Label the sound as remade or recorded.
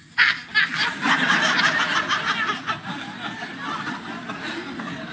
recorded